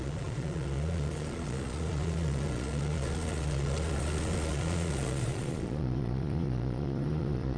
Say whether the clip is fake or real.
fake